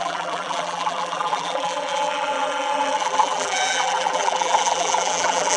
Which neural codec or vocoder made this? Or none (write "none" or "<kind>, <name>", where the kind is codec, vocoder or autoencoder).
vocoder, BigVGAN v2